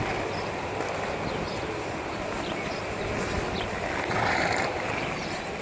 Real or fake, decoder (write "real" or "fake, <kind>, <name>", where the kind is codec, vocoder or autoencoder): real